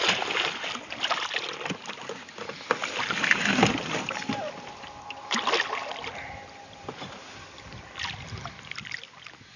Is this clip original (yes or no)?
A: yes